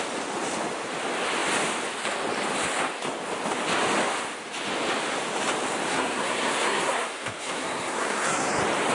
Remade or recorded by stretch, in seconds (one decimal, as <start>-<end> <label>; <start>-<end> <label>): 0.0-5.9 recorded; 5.9-8.5 remade; 8.5-8.9 recorded